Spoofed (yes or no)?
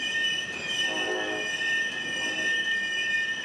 no